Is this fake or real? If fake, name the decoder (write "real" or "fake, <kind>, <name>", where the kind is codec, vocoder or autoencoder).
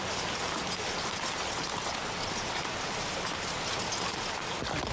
real